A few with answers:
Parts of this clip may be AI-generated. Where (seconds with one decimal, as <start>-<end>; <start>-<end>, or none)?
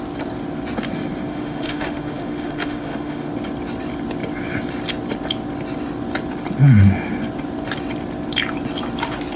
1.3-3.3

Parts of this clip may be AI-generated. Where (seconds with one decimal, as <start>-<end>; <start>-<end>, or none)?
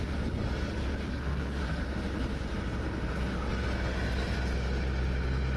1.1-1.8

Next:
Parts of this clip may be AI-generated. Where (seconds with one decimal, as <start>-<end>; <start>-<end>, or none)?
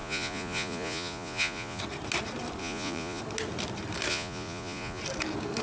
0.0-1.8; 2.6-3.2; 4.1-5.0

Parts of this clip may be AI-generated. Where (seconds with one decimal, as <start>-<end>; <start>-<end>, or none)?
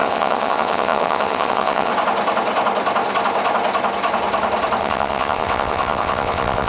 0.0-1.9; 4.8-6.7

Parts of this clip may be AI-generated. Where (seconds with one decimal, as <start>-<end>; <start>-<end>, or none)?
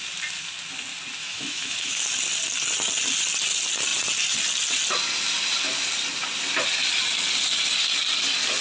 1.2-2.0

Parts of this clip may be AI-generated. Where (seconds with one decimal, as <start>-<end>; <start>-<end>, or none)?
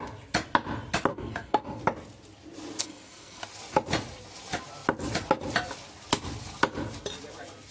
1.1-1.8; 2.8-3.4